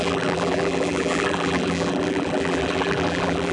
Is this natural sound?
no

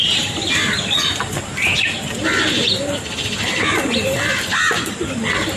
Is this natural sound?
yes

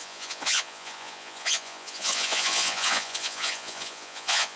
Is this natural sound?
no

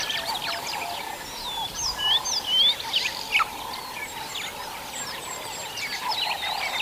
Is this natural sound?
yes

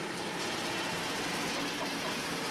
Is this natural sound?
yes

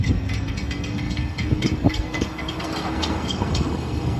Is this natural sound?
no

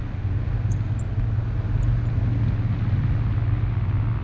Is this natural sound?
yes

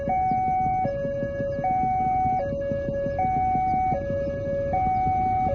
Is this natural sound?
yes